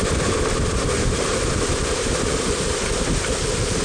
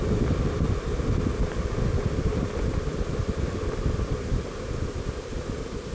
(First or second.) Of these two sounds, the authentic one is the second